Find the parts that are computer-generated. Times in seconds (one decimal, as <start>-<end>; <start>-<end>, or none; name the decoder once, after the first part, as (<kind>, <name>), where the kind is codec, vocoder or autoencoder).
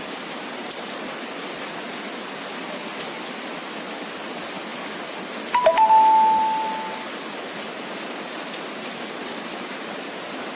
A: none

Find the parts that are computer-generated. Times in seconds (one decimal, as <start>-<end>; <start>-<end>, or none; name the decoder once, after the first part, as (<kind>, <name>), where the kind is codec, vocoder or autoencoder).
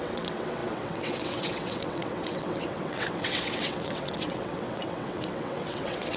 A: 0.0-6.2 (vocoder, WaveNeXt)